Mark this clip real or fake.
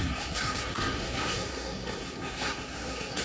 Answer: fake